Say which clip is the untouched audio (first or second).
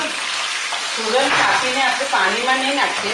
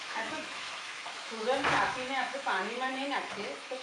first